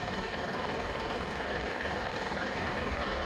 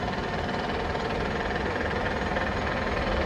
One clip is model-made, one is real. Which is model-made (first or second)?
first